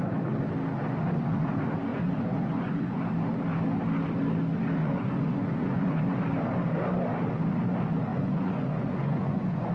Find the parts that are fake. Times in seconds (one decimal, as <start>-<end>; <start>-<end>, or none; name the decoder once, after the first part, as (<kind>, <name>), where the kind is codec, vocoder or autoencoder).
1.9-3.0 (vocoder, Vocos); 4.8-6.0; 8.1-9.7